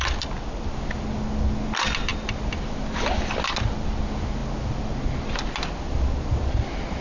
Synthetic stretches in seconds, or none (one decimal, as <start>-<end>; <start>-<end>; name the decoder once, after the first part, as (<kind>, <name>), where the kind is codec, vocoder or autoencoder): none